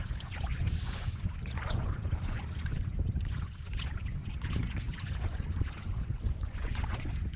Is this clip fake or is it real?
fake